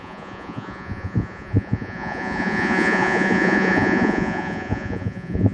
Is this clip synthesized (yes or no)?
yes